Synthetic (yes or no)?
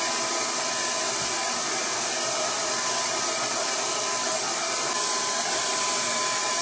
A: no